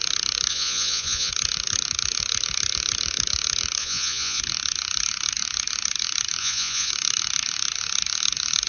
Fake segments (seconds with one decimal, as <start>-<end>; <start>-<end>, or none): 0.5-1.3; 3.8-4.4; 6.4-6.9